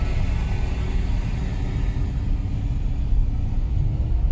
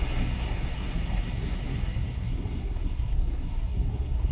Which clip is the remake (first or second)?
second